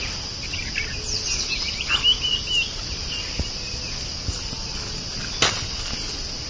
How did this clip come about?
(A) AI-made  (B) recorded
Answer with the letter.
B